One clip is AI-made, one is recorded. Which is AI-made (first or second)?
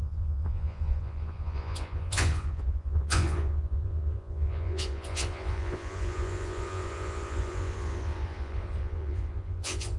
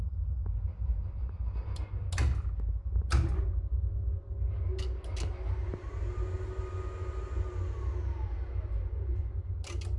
first